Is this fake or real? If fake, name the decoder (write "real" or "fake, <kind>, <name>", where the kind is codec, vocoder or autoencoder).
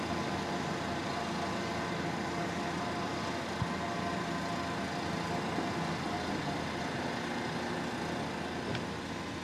real